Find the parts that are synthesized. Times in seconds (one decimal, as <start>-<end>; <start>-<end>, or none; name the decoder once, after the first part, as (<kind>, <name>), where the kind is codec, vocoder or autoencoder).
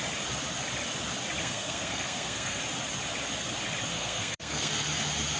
1.4-2.6 (codec, SNAC); 3.9-4.7